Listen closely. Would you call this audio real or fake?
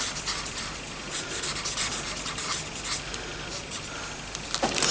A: real